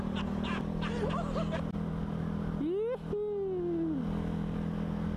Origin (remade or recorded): recorded